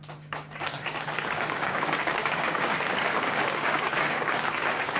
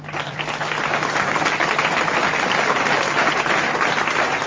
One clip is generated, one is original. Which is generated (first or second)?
first